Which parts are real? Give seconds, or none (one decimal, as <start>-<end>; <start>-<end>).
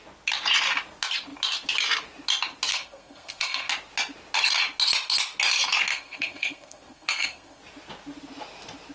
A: 0.0-2.7; 3.7-5.9; 7.6-8.9